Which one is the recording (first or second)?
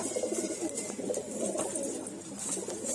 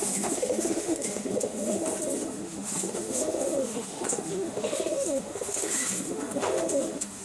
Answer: first